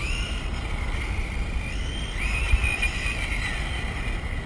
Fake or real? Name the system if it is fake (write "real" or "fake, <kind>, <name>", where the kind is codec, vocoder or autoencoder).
real